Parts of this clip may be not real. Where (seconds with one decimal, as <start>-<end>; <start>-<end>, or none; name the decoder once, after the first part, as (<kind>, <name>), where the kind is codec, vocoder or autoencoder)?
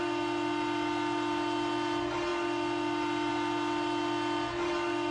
none